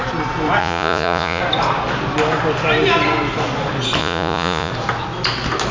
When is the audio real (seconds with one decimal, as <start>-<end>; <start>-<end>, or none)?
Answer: 0.0-0.6; 1.4-4.0; 4.7-5.7